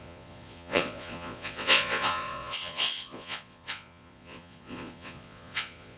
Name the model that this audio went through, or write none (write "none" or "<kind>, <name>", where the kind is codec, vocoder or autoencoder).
vocoder, Vocos